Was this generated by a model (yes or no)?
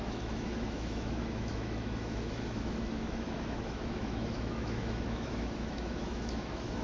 yes